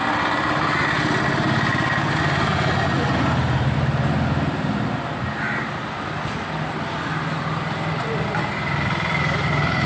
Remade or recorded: recorded